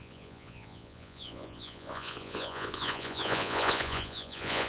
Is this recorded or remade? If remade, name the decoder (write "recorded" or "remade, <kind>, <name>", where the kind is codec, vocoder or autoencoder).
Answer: remade, vocoder, Vocos